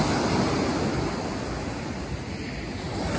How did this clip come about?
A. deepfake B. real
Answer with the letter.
B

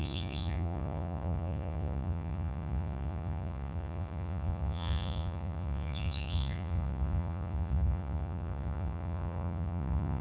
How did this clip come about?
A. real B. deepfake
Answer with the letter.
B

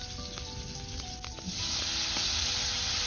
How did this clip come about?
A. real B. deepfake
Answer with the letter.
A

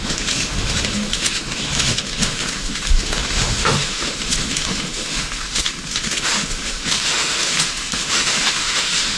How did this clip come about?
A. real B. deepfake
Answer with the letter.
B